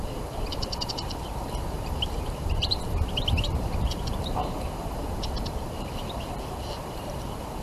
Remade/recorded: remade